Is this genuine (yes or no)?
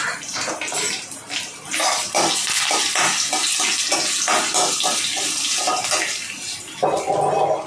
yes